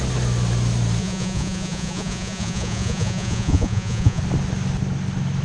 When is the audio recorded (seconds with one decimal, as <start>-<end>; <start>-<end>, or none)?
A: 0.0-1.0; 4.2-5.4